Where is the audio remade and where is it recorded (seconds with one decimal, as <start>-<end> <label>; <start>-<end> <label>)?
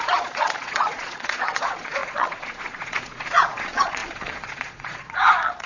0.0-5.7 remade